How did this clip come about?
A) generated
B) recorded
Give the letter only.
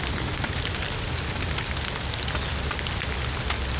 B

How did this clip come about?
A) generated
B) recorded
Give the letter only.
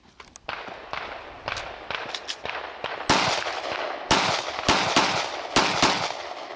B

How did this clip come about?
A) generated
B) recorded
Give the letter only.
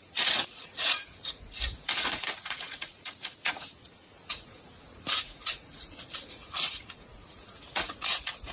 A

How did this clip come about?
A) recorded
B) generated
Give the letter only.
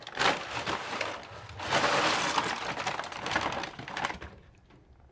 A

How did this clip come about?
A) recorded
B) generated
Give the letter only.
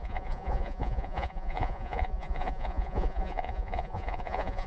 B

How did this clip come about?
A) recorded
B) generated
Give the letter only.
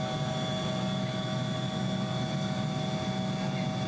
A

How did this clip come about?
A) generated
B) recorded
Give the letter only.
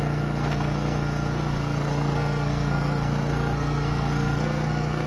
A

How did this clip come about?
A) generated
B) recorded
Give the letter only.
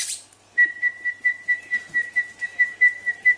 B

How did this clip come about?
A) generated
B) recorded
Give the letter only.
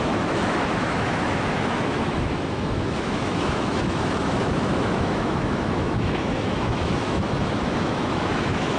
A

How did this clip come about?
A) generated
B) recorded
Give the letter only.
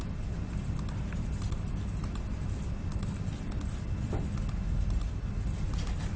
B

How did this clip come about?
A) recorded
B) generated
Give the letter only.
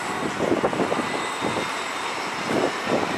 B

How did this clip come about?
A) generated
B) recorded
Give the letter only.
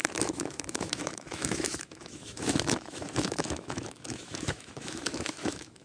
A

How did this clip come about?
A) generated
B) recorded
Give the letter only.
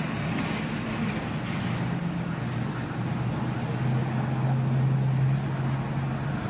B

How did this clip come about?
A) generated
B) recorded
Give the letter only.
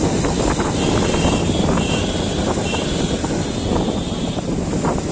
B